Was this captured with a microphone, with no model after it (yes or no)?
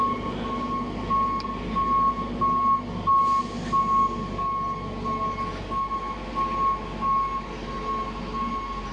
yes